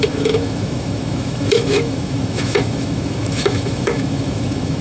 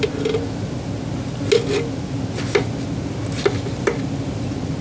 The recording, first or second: second